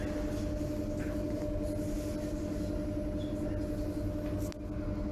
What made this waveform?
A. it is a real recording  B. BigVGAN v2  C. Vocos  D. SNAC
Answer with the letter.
A